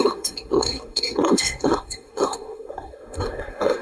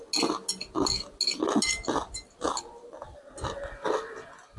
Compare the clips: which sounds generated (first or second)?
first